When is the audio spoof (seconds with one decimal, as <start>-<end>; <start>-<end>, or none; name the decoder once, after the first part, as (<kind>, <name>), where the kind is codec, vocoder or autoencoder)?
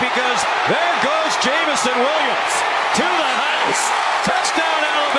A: 3.5-4.4 (codec, SNAC)